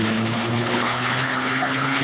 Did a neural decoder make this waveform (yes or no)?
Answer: yes